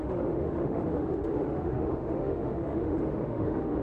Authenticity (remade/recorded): remade